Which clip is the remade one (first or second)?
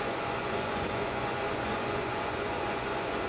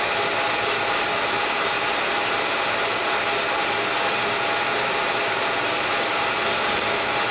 first